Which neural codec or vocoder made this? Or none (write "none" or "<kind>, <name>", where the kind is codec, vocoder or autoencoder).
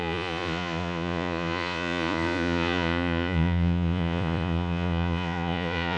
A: vocoder, Vocos